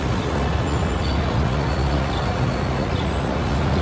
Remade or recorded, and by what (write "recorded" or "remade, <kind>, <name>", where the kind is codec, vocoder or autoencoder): remade, vocoder, Vocos